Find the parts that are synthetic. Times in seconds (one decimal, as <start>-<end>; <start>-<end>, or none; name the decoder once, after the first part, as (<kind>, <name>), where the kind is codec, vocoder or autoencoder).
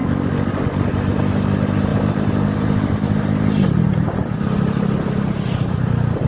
1.9-2.9 (vocoder, BigVGAN v2)